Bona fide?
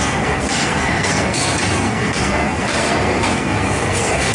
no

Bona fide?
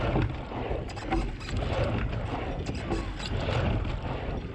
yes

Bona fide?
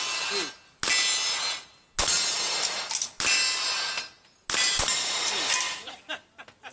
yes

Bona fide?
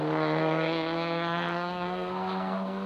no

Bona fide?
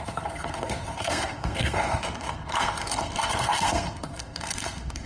no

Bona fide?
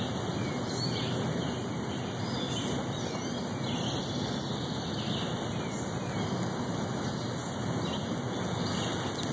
yes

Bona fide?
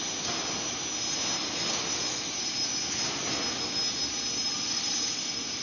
yes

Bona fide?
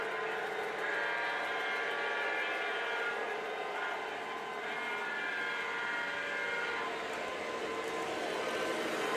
yes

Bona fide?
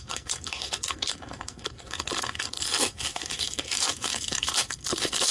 no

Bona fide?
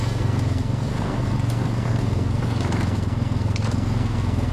no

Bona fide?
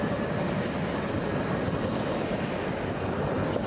yes